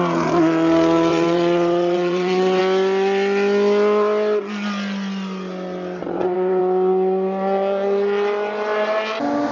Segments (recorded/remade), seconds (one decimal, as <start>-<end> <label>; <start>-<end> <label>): 0.0-1.1 recorded; 1.1-2.6 remade; 2.6-6.0 recorded; 6.0-6.6 remade; 6.6-9.5 recorded